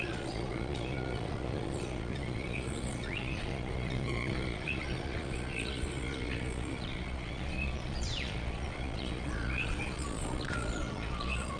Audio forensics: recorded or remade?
remade